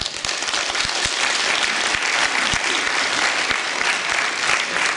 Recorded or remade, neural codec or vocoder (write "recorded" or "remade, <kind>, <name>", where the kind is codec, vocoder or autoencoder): recorded